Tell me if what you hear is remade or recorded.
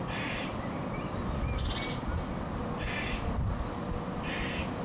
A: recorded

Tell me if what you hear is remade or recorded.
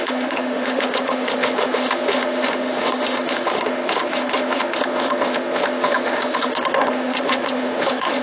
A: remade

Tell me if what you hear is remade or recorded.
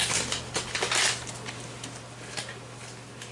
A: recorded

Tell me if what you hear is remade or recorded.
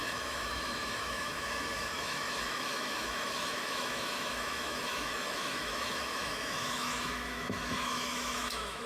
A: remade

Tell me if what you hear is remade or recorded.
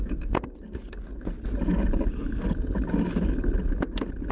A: recorded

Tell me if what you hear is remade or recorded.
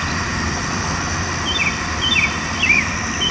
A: recorded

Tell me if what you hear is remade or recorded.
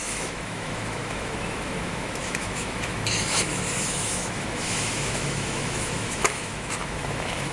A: remade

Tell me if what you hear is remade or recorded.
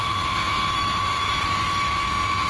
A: remade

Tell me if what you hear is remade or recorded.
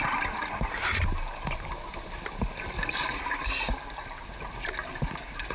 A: recorded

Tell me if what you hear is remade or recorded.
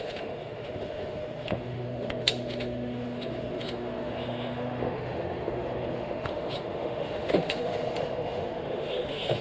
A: remade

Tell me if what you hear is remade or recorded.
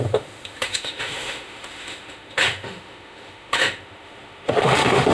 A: remade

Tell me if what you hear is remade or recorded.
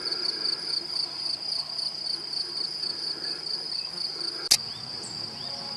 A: recorded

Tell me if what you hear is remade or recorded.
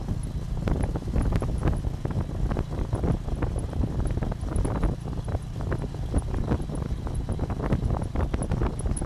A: recorded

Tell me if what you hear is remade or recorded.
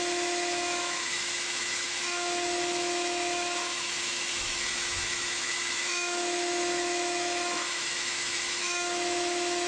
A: remade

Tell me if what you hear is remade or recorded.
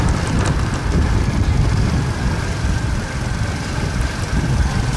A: recorded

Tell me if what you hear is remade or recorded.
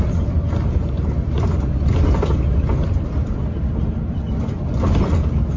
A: recorded